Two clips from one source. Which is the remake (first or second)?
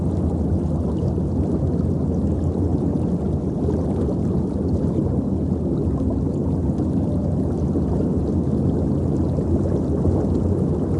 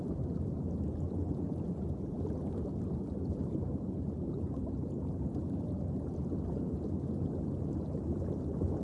second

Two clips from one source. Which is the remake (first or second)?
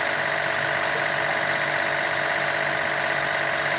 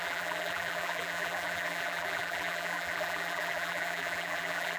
second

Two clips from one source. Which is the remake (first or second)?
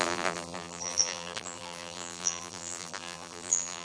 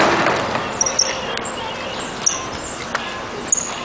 first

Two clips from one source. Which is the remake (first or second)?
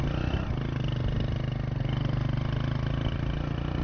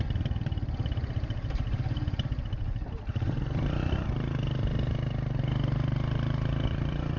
second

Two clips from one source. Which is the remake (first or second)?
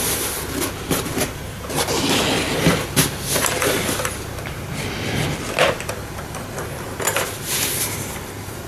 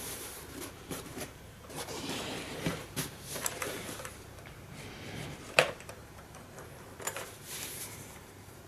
second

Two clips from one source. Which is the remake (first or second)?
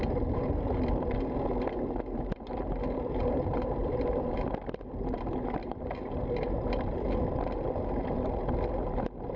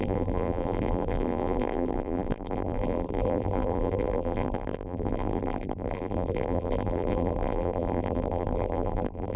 second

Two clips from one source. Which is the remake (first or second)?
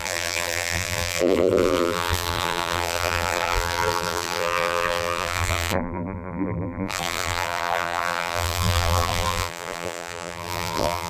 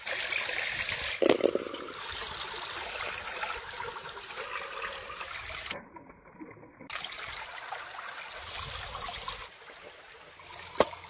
first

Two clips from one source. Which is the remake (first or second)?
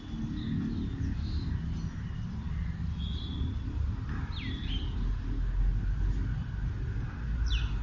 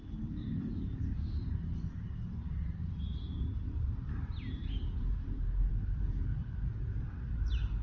second